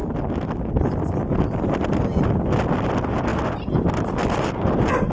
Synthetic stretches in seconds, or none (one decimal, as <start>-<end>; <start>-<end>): none